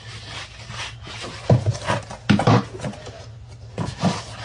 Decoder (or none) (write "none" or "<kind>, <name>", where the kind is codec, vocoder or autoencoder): none